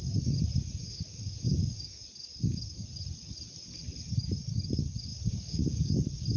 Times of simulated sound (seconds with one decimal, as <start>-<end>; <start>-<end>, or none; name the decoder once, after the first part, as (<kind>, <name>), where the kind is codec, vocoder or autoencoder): 0.8-2.0 (codec, DAC); 5.1-5.9